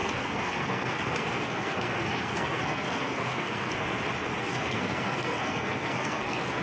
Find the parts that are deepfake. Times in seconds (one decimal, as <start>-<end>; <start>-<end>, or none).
0.0-4.0; 4.4-6.6